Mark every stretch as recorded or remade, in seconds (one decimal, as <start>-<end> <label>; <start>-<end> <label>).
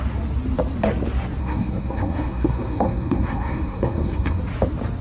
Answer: 0.0-1.4 recorded; 1.4-4.4 remade; 4.4-5.0 recorded